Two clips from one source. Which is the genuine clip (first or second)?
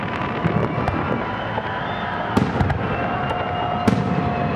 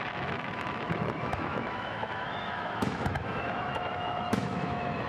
first